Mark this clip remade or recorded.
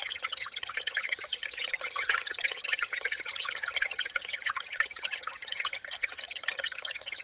remade